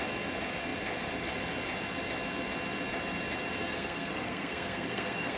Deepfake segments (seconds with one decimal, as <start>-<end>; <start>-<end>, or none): 3.6-5.4